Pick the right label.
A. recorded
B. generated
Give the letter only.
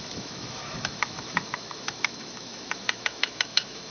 B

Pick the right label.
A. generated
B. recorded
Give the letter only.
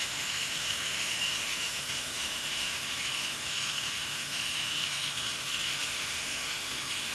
A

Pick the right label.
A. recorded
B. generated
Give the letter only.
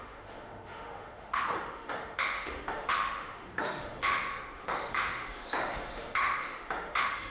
B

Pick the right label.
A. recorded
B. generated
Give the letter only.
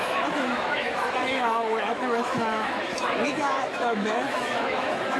B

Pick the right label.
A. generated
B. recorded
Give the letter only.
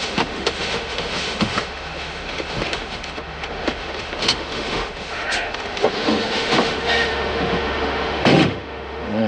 A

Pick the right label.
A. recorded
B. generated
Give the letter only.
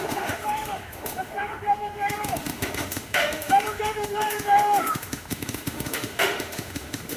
B